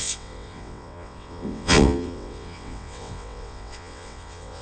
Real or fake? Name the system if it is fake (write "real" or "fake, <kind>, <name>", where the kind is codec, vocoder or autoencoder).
fake, vocoder, WaveNeXt